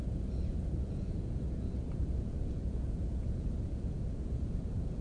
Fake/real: fake